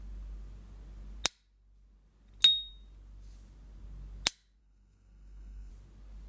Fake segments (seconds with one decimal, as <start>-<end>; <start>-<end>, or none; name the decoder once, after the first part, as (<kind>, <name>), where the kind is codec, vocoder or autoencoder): 4.6-5.7 (codec, SNAC)